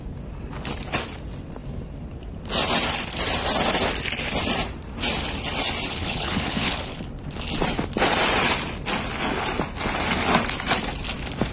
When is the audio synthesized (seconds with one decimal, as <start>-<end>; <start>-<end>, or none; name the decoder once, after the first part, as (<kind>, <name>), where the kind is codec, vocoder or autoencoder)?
5.9-7.2 (codec, HILCodec)